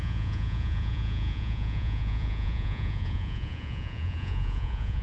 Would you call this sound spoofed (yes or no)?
yes